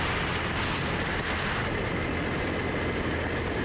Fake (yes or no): no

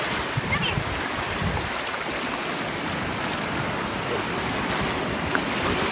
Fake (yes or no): no